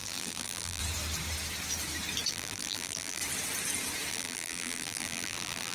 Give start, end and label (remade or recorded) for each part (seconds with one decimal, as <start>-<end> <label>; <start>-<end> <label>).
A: 0.0-0.8 remade; 0.8-2.3 recorded; 2.3-3.2 remade; 3.2-4.1 recorded; 4.1-5.7 remade